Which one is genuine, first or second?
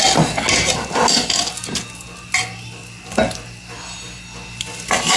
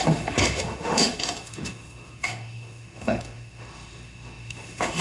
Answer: first